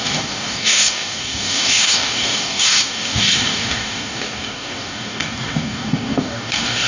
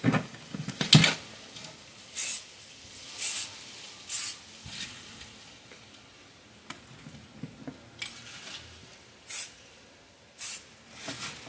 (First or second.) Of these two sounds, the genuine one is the second